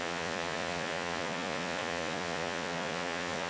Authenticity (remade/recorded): remade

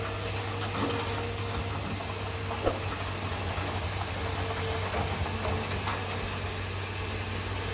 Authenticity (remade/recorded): recorded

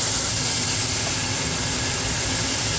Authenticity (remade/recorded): recorded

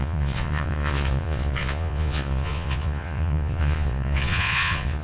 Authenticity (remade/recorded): remade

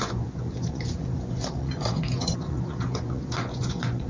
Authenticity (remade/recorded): remade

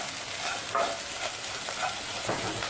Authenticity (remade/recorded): recorded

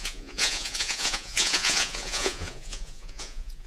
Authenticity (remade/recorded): remade